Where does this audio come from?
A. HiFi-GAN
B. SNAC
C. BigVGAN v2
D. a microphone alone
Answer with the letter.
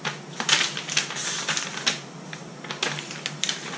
D